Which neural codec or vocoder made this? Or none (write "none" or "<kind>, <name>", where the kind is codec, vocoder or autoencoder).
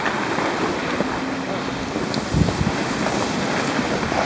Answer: none